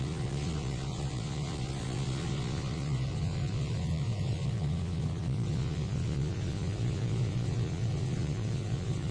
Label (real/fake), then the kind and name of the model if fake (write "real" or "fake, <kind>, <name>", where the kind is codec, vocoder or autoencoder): fake, vocoder, Vocos